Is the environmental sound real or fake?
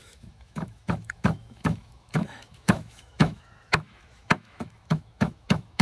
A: fake